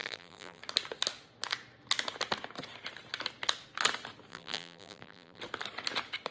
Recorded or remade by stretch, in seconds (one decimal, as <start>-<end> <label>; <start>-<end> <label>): 0.0-0.6 remade; 0.6-4.3 recorded; 4.3-5.4 remade; 5.4-6.3 recorded

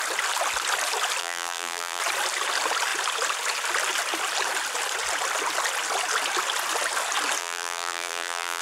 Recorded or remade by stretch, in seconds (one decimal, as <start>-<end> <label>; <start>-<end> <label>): 0.0-1.2 recorded; 1.2-2.0 remade; 2.0-7.4 recorded; 7.4-8.6 remade

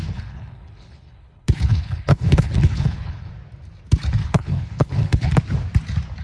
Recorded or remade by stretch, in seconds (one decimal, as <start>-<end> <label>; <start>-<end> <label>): 0.0-3.3 remade; 3.3-4.2 recorded; 4.2-5.3 remade; 5.3-6.2 recorded

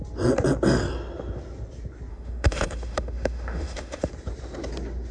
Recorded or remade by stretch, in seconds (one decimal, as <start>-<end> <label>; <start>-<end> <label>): 0.0-2.1 recorded; 2.1-4.1 remade; 4.1-5.1 recorded

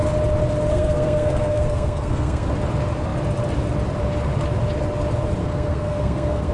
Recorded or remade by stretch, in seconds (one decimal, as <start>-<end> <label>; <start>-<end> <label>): 0.0-0.7 recorded; 0.7-2.5 remade; 2.5-5.4 recorded; 5.4-6.5 remade

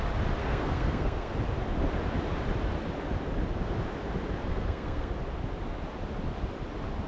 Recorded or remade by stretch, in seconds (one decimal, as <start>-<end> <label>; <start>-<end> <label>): 0.0-0.4 recorded; 0.4-1.3 remade; 1.3-4.5 recorded; 4.5-5.1 remade; 5.1-7.1 recorded

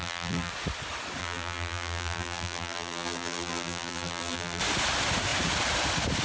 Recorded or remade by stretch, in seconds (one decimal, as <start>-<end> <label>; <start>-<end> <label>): 0.0-0.5 remade; 0.5-1.2 recorded; 1.2-4.6 remade; 4.6-6.2 recorded